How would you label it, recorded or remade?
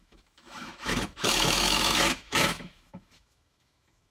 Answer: remade